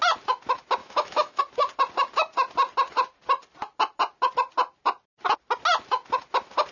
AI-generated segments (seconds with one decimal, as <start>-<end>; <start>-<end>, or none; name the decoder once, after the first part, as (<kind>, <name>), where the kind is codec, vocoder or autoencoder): 0.8-1.4 (autoencoder, DAC-VAE)